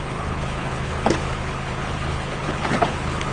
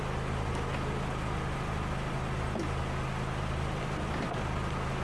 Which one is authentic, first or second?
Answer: second